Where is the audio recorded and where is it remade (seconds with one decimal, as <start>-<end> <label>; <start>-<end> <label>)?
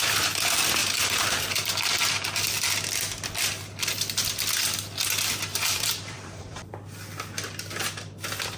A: 0.0-0.8 recorded; 0.8-1.7 remade; 1.7-5.5 recorded; 5.5-6.7 remade; 6.7-8.6 recorded